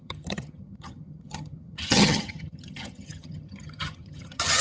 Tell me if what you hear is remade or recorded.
remade